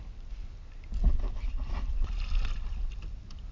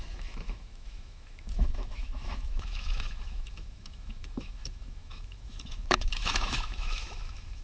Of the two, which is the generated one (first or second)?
second